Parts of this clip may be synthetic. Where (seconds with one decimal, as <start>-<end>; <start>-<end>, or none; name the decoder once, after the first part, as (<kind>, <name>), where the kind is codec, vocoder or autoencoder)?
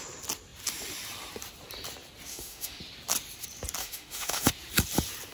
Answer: 2.3-2.8 (autoencoder, DAC-VAE); 3.8-4.5